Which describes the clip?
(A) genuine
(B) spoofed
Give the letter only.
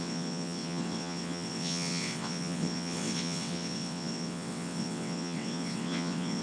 B